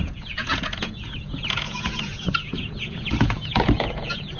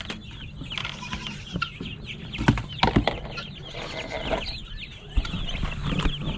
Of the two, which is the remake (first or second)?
first